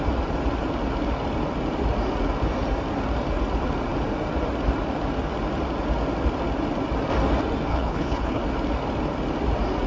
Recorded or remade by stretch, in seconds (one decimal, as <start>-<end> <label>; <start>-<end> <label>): 0.0-7.7 recorded; 7.7-8.4 remade; 8.4-9.9 recorded